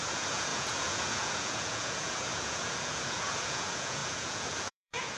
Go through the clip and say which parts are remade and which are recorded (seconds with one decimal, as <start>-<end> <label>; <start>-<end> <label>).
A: 0.0-5.2 remade